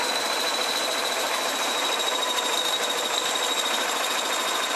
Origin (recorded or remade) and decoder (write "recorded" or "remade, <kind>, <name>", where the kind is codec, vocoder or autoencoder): remade, vocoder, BigVGAN v2